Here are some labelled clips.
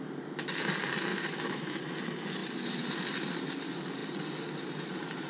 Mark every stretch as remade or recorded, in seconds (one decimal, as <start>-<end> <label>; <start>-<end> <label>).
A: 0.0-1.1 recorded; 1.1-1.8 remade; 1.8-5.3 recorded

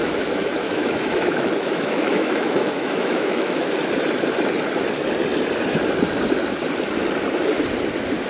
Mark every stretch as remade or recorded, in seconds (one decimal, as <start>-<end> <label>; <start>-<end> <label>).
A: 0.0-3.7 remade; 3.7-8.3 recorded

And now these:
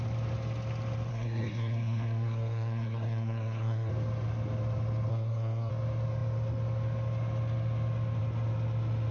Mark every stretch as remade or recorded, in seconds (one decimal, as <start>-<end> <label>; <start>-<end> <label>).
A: 0.0-1.1 recorded; 1.1-3.9 remade; 3.9-5.1 recorded; 5.1-5.7 remade; 5.7-9.1 recorded